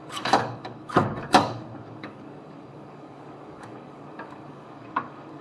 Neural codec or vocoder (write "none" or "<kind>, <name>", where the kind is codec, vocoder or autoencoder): codec, DAC